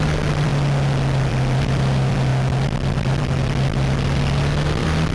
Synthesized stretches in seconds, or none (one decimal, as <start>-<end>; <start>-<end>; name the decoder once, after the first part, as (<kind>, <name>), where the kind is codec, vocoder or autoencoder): 0.0-0.5 (vocoder, BigVGAN v2); 1.2-2.3; 2.9-5.1